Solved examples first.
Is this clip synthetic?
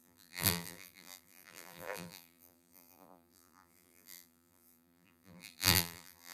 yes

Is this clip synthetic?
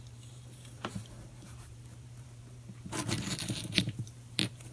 yes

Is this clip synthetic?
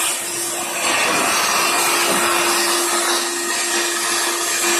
no